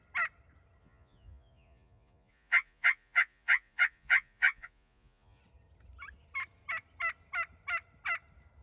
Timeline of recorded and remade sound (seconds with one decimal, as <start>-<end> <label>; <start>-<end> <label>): 0.0-0.8 recorded; 0.8-5.4 remade; 5.4-8.6 recorded